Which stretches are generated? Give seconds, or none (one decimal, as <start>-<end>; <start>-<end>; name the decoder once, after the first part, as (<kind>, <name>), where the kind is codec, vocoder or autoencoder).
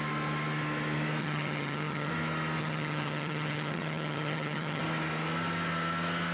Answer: 1.2-2.1 (vocoder, HiFi-GAN); 2.6-4.8